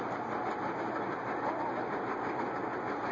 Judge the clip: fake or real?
real